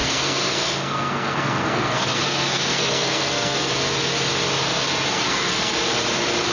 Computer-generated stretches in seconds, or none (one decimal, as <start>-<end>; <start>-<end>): 0.0-3.7; 5.1-5.9